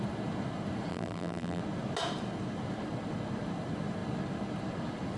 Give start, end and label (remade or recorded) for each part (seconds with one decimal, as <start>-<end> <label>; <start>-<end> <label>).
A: 0.0-0.9 recorded; 0.9-1.6 remade; 1.6-5.2 recorded

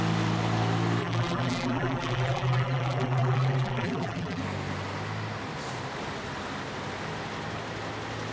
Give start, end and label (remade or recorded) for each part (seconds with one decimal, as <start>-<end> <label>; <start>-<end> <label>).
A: 0.0-1.0 recorded; 1.0-4.4 remade; 4.4-8.3 recorded

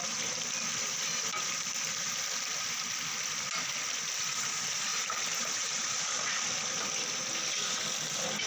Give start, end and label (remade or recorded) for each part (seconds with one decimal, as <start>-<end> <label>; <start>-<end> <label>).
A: 0.0-4.9 recorded; 4.9-6.0 remade; 6.0-8.5 recorded

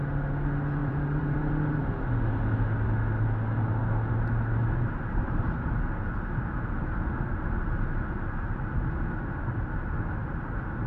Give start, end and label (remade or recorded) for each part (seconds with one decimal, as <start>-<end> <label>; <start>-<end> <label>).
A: 0.0-0.8 recorded; 0.8-1.5 remade; 1.5-4.6 recorded; 4.6-5.5 remade; 5.5-10.9 recorded